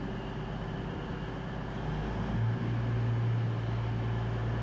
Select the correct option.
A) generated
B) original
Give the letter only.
B